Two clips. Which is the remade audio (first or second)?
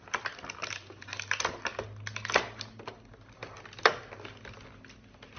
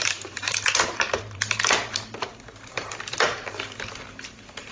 second